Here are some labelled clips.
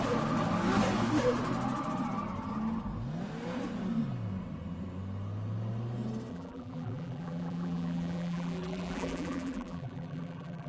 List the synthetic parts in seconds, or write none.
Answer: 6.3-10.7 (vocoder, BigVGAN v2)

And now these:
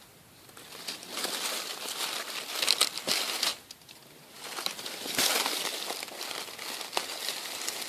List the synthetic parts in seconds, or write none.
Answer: 3.5-4.4 (vocoder, BigVGAN v2)

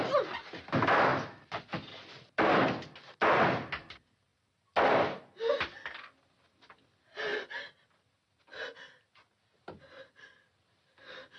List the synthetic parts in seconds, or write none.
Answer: none

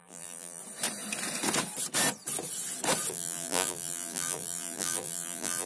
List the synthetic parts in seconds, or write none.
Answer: 0.0-0.6 (vocoder, BigVGAN v2); 3.1-5.7

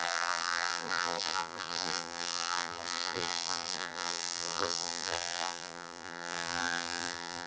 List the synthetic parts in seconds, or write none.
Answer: 0.0-7.5 (vocoder, BigVGAN v2)